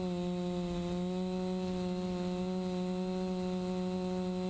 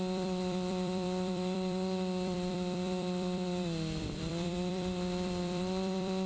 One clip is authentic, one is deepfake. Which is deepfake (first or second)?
second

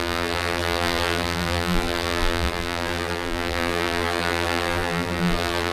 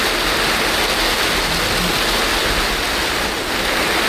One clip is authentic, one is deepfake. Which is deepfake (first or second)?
first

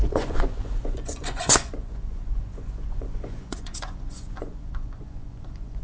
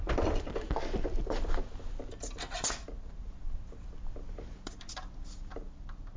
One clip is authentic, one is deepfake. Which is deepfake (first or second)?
first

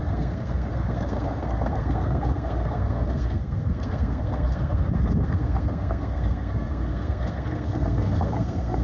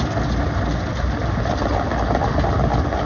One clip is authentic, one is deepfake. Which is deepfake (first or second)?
first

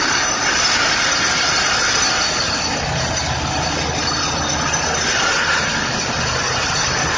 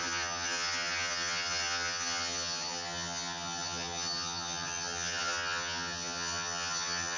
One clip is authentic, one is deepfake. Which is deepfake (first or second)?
second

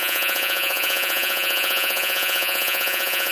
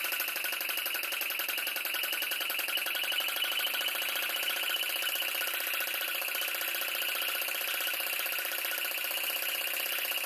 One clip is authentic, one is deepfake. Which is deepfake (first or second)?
first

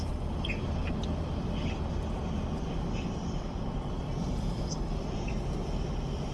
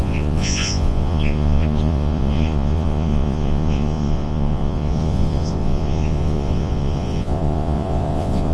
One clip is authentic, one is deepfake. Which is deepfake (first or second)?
second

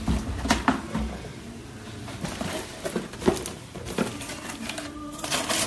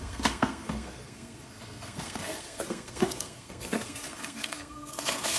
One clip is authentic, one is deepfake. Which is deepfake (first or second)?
second